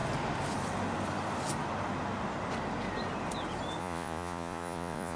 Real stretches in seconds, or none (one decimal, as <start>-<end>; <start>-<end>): 0.0-3.8

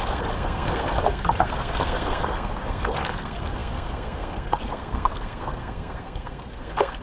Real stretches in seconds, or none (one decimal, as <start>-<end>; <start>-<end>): none

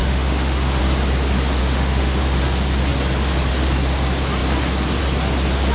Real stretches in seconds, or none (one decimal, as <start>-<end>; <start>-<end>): 0.8-1.6; 2.2-5.7

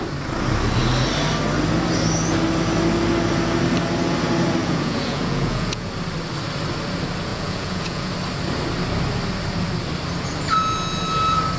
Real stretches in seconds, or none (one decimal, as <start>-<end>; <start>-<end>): 0.0-4.6; 5.9-7.3; 8.1-11.6